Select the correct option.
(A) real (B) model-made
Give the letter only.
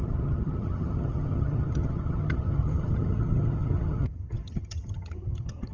B